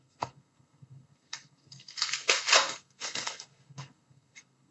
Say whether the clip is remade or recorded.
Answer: remade